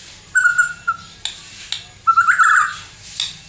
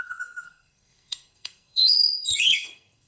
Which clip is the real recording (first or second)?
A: first